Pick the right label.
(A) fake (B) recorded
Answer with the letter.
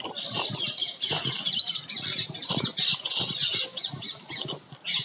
B